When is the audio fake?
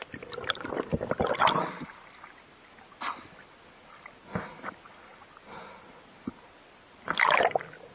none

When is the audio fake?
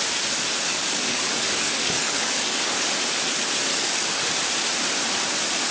0.7-2.6; 3.7-4.2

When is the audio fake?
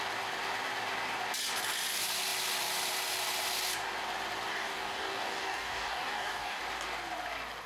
4.5-6.6